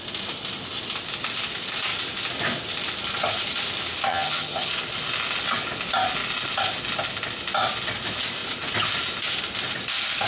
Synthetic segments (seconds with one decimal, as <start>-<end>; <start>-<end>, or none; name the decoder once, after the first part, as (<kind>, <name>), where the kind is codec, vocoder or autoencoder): 4.1-4.7 (vocoder, HiFi-GAN)